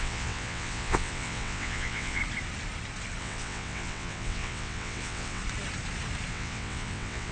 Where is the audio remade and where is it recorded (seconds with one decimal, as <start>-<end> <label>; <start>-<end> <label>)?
0.0-2.2 remade; 2.2-3.2 recorded; 3.2-5.4 remade; 5.4-6.3 recorded; 6.3-7.3 remade